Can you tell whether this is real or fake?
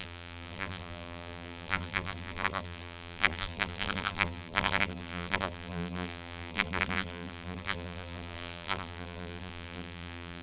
fake